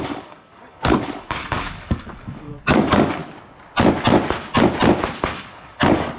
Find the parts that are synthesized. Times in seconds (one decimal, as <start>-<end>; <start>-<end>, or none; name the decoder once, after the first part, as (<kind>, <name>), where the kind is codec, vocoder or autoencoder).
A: 0.0-3.2 (codec, DAC); 5.2-6.2